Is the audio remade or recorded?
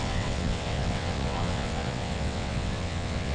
remade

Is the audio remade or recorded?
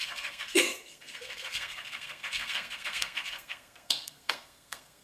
remade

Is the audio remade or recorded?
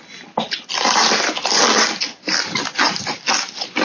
recorded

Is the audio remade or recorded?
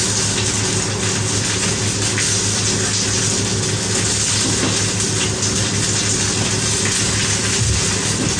recorded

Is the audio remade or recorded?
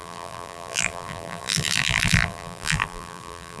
remade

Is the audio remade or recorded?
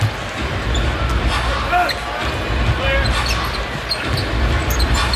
recorded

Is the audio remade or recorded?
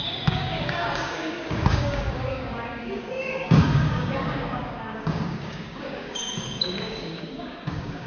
remade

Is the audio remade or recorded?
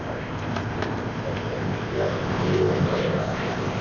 remade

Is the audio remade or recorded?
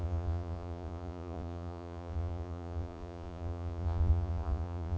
remade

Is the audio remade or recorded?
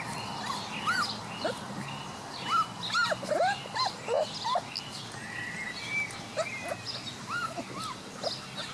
recorded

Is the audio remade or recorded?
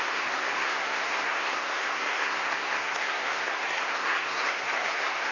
remade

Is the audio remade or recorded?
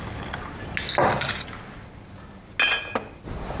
recorded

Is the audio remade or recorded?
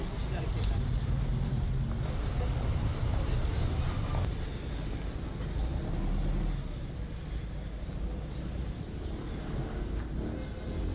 recorded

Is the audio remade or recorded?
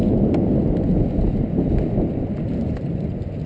recorded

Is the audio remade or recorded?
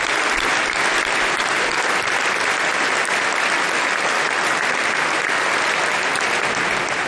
recorded